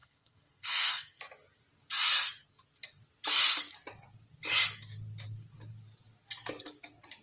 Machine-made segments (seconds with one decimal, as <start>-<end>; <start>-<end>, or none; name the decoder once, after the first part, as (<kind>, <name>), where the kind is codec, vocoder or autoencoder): 0.0-1.2 (codec, SNAC)